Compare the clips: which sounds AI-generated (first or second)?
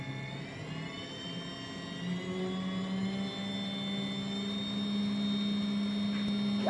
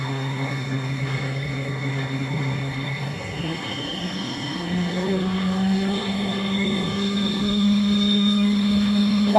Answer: second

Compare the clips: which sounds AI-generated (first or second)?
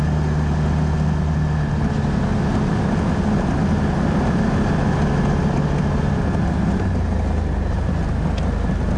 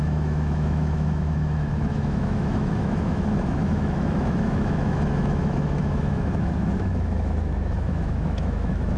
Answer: second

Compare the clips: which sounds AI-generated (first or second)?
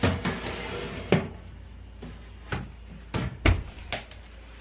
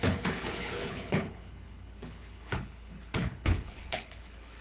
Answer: second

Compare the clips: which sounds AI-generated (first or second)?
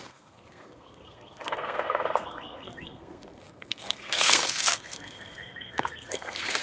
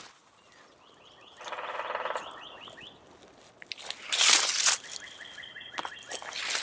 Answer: first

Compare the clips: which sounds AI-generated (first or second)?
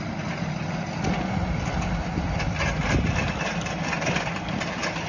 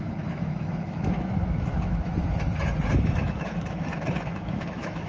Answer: second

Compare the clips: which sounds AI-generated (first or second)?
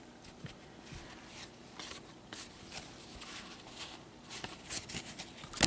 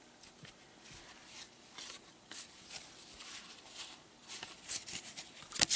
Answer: second